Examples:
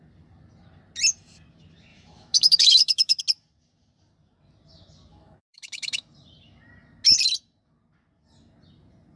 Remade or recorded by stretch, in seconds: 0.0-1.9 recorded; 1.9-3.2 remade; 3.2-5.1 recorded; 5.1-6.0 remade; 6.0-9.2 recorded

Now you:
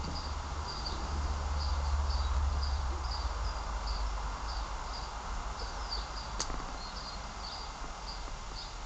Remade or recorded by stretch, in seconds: 0.0-2.4 recorded; 2.4-3.1 remade; 3.1-8.9 recorded

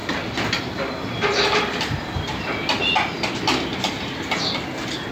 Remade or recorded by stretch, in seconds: 0.0-5.1 recorded